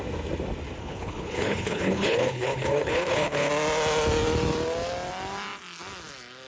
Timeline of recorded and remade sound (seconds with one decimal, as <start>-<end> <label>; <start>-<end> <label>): 0.0-0.8 recorded; 0.8-3.5 remade; 3.5-6.5 recorded